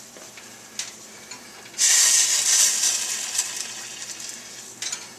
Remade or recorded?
recorded